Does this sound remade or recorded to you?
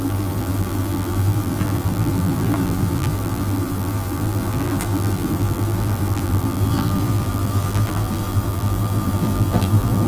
remade